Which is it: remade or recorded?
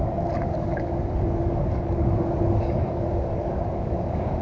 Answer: remade